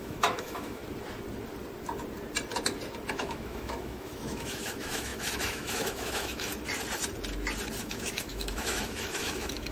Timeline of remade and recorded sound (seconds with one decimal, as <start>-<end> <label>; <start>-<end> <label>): 0.0-0.8 remade; 0.8-3.1 recorded; 3.1-6.5 remade; 6.5-7.8 recorded; 7.8-9.7 remade